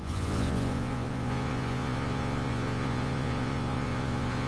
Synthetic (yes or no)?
yes